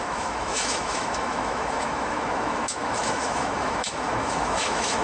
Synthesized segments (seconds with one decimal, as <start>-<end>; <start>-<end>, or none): 0.0-5.0

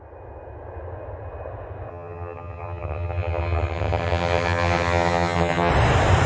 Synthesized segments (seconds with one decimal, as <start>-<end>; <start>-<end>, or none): 1.9-5.7

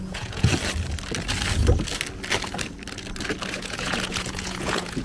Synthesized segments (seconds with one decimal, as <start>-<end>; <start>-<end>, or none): 0.0-0.5; 3.5-5.0